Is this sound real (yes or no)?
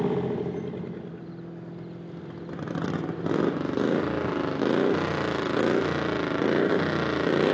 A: yes